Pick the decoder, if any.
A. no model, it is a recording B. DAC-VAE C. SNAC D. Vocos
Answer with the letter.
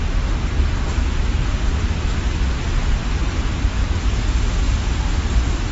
A